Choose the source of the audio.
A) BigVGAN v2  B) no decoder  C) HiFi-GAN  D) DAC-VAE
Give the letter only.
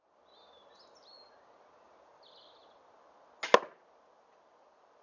B